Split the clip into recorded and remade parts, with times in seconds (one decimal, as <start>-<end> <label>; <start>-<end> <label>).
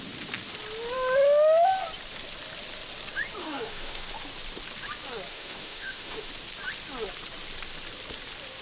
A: 0.0-3.4 recorded; 3.4-4.1 remade; 4.1-5.3 recorded; 5.3-6.3 remade; 6.3-8.6 recorded